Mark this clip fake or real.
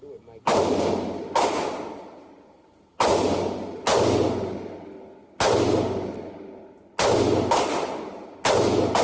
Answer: real